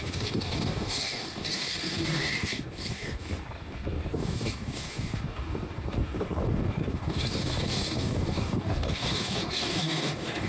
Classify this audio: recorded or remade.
remade